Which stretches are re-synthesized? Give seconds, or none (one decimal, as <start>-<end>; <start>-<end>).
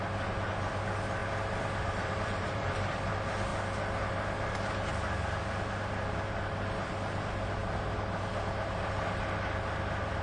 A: 1.2-3.1